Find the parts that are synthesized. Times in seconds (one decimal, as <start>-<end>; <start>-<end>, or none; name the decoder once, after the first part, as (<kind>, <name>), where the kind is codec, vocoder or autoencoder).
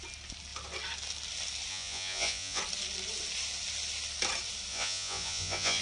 1.7-2.6 (vocoder, Vocos); 4.7-5.8